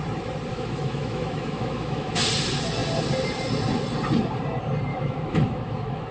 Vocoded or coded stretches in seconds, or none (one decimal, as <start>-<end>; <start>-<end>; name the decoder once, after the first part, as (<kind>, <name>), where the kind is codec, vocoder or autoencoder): 0.5-2.2 (autoencoder, DAC-VAE); 4.9-6.1